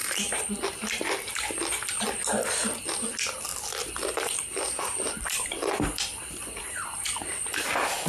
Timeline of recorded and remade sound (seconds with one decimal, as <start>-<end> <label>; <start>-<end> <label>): 0.0-3.5 recorded; 3.5-8.1 remade